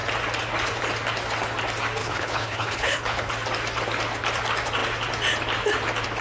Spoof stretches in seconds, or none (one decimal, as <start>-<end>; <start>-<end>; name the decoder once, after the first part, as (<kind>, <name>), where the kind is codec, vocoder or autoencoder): 2.0-3.3 (codec, HILCodec)